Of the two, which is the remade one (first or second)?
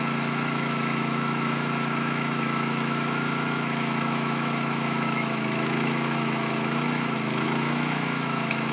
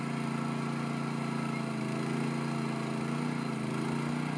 first